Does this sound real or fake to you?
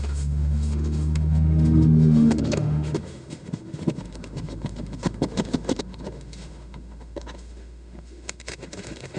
fake